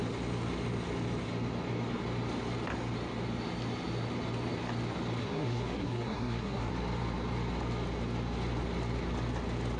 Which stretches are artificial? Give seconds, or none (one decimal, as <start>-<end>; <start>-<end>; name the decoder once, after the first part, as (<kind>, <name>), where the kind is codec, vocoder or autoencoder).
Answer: 5.2-6.7 (codec, SNAC)